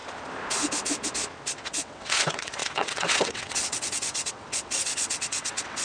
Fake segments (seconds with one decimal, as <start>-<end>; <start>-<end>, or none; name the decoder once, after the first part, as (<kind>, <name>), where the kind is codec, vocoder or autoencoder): 1.6-5.8 (vocoder, WaveNeXt)